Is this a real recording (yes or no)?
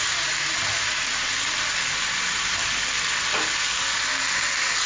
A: yes